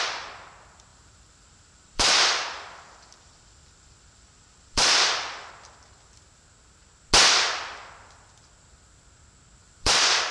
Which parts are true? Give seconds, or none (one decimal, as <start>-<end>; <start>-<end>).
0.0-0.9; 5.5-9.6